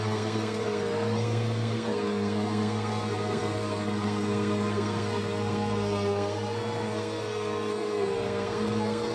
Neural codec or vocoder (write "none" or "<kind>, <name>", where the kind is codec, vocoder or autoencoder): codec, SNAC